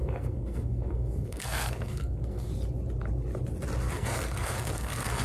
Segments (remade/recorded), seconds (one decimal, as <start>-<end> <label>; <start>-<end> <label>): 0.0-2.5 remade; 2.5-3.8 recorded; 3.8-5.2 remade